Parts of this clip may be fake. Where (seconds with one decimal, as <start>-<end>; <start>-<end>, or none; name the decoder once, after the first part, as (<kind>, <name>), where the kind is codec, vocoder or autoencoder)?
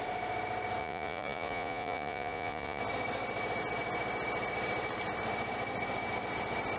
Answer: 0.8-2.8 (vocoder, Vocos)